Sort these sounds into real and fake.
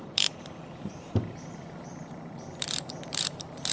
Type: fake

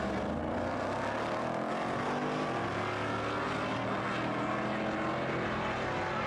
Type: real